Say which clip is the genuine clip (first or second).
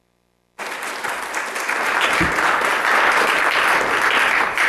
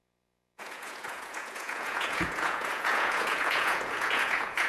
first